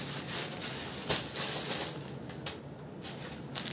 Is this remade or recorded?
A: recorded